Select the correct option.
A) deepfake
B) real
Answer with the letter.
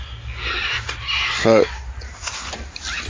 B